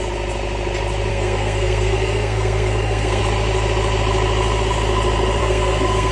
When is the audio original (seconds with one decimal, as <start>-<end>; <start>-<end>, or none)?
0.0-1.1; 3.2-5.4